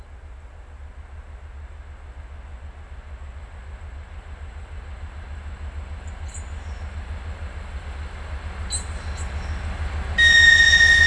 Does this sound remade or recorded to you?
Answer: recorded